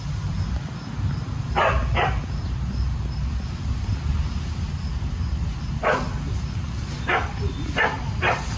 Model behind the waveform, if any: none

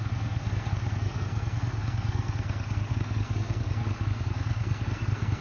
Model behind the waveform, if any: codec, SNAC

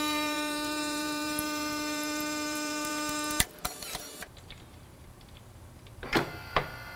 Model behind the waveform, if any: vocoder, BigVGAN v2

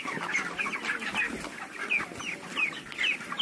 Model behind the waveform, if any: none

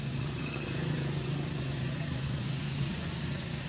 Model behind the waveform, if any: vocoder, Vocos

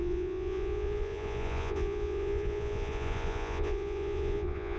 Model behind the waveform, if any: vocoder, Vocos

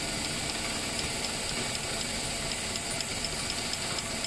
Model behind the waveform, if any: none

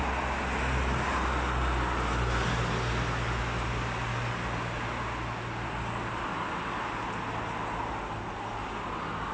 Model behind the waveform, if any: none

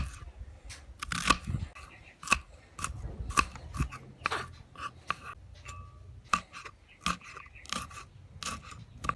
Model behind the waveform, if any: none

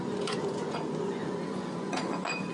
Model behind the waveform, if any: vocoder, Vocos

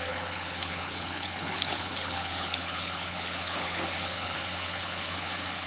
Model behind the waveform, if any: codec, HILCodec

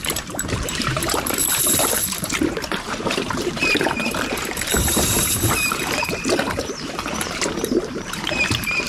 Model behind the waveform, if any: vocoder, BigVGAN v2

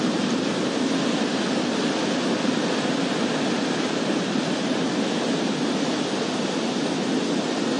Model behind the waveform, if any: none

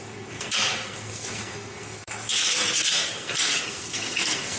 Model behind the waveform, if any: codec, SNAC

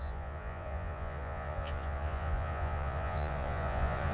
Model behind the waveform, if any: vocoder, Vocos